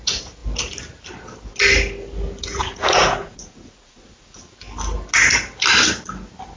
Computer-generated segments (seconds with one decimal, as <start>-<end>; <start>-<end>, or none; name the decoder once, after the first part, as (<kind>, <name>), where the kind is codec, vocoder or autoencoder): 2.5-4.4 (vocoder, Vocos)